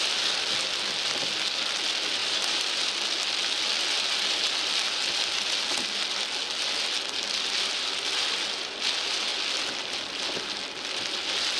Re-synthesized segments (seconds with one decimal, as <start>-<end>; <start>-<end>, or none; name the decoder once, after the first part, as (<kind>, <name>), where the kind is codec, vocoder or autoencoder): 2.2-2.8 (vocoder, BigVGAN v2)